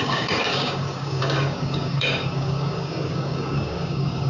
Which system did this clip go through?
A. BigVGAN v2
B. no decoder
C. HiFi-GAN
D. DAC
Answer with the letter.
D